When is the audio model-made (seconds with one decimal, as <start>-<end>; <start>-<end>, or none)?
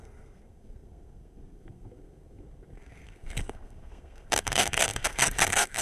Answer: 0.0-5.8